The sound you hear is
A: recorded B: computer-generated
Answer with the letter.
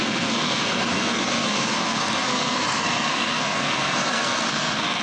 B